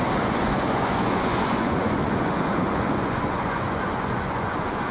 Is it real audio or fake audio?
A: fake